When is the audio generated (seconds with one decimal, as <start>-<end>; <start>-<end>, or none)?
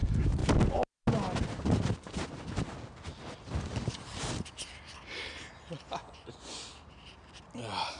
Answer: 6.0-6.6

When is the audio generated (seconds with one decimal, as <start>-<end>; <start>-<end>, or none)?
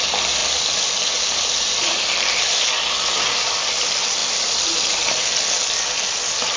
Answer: 0.4-2.7; 4.2-5.2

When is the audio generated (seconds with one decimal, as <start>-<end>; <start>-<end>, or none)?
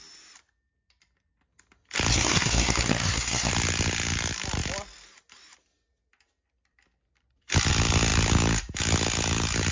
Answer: 2.1-3.5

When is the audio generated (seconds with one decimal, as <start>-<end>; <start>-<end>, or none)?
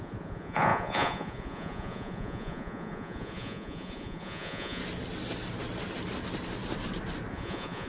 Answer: 0.0-4.8; 7.3-7.9